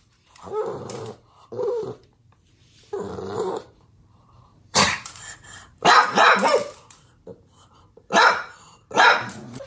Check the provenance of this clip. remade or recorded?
remade